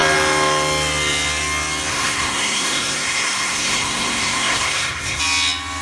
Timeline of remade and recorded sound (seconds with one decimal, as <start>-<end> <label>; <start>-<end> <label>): 0.0-1.9 recorded; 1.9-5.2 remade; 5.2-5.8 recorded